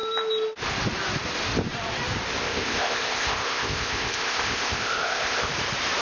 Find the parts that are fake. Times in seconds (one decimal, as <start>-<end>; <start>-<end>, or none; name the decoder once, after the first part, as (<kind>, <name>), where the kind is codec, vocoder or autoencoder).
2.4-5.5 (codec, ZipCodec)